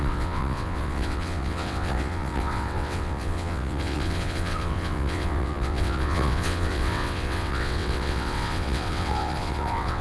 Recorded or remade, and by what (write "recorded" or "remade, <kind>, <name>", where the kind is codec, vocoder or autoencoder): remade, vocoder, WaveNeXt